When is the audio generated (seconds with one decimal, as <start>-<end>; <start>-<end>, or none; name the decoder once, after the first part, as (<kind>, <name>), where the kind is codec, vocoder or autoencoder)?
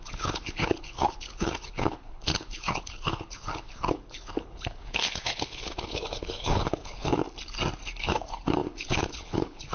0.0-7.2 (codec, HILCodec); 8.0-9.7